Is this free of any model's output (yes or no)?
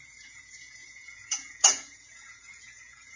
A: no